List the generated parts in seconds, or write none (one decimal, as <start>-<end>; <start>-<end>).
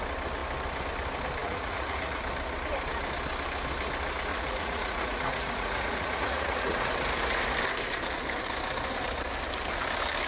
1.4-2.2; 4.3-6.9